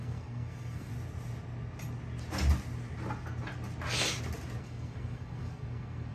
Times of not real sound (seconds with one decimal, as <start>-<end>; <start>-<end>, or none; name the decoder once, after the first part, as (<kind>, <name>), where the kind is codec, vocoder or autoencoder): 0.0-0.9 (codec, SNAC); 4.6-6.1